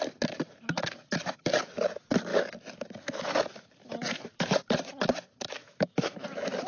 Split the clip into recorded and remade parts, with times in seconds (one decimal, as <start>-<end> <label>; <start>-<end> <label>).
0.0-5.6 recorded; 5.6-6.1 remade; 6.1-6.7 recorded